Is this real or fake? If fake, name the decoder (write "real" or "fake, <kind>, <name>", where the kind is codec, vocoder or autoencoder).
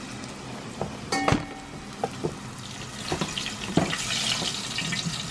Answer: real